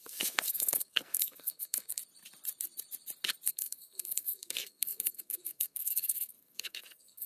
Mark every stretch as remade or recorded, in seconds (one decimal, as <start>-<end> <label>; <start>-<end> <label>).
0.0-2.0 remade; 2.0-3.5 recorded; 3.5-7.3 remade

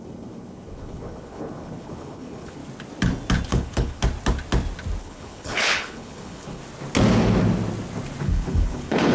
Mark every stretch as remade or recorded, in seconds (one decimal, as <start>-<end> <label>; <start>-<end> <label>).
0.0-2.6 remade; 2.6-3.5 recorded; 3.5-4.0 remade; 4.0-5.0 recorded; 5.0-6.6 remade; 6.6-8.2 recorded; 8.2-9.1 remade